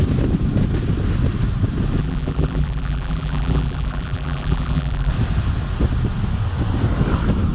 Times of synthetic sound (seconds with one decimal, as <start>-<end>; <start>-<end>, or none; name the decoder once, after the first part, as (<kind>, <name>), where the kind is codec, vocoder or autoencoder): 2.0-5.1 (vocoder, BigVGAN v2)